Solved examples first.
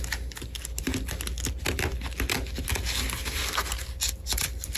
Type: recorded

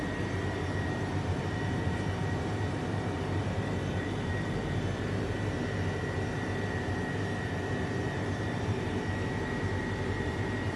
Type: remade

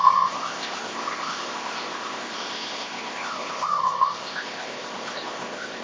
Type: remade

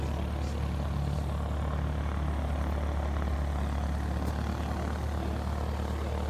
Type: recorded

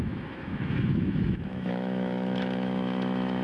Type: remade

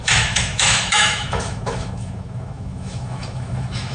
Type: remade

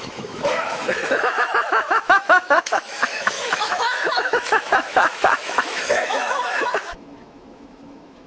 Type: remade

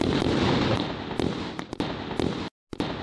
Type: recorded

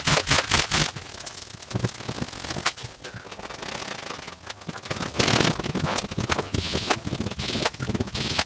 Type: remade